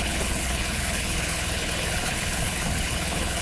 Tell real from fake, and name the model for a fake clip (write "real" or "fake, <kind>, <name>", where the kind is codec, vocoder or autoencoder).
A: fake, codec, HILCodec